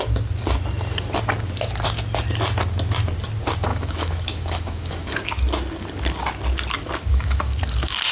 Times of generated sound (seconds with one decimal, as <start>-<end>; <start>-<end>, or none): 3.7-5.1; 7.1-7.6

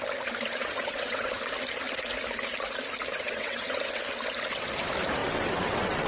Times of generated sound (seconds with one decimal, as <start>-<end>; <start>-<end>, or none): 0.6-1.3; 3.1-4.0; 5.2-6.1

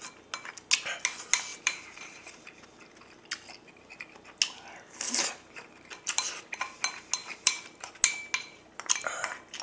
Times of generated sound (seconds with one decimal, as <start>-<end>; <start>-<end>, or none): 1.5-2.4; 7.2-7.9

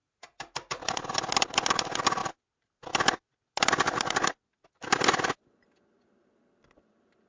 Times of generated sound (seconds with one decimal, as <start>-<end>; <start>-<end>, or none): 0.0-0.8

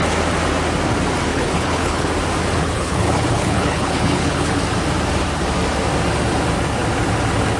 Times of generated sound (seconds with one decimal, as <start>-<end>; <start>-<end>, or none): 1.3-2.1; 2.6-4.6

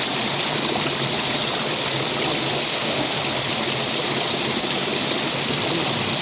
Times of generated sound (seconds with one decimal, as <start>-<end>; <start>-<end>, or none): 2.7-3.2